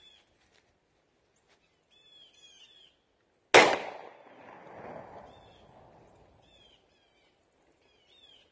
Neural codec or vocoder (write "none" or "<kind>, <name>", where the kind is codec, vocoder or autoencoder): none